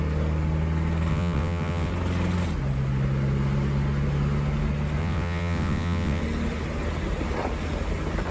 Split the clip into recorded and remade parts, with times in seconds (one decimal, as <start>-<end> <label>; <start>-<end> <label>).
0.0-1.1 recorded; 1.1-1.9 remade; 1.9-5.0 recorded; 5.0-6.2 remade; 6.2-8.3 recorded